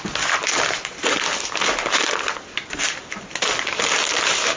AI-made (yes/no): no